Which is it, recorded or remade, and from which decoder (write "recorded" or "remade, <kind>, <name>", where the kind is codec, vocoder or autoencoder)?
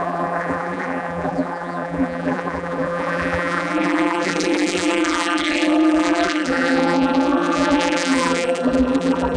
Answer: remade, vocoder, BigVGAN v2